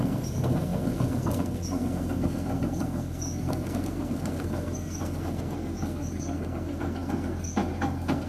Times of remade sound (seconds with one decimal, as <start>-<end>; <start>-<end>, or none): 0.0-8.3